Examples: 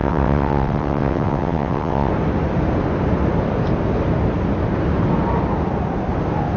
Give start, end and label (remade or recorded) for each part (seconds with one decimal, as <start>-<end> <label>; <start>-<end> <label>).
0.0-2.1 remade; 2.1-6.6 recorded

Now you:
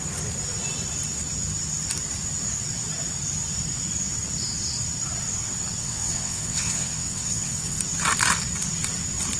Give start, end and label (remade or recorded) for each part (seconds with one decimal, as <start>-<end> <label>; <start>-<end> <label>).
0.0-5.8 recorded; 5.8-7.8 remade; 7.8-9.4 recorded

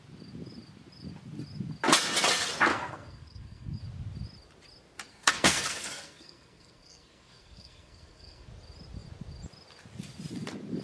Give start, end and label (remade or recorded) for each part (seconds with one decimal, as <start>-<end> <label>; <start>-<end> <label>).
0.0-2.7 recorded; 2.7-3.8 remade; 3.8-5.1 recorded; 5.1-8.5 remade; 8.5-10.8 recorded